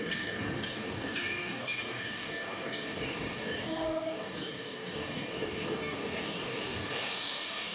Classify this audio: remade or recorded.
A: remade